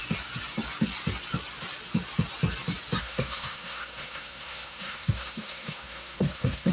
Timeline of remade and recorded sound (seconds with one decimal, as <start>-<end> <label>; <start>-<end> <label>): 0.0-3.0 recorded; 3.0-6.7 remade